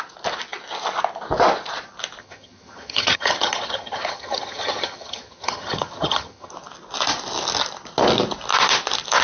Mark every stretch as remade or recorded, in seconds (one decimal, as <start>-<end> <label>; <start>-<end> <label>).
0.0-2.2 recorded; 2.2-6.5 remade; 6.5-9.2 recorded